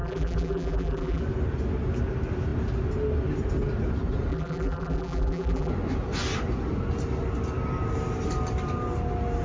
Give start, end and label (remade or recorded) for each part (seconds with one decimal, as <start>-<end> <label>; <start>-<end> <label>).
0.0-1.2 remade; 1.2-4.3 recorded; 4.3-5.7 remade; 5.7-9.4 recorded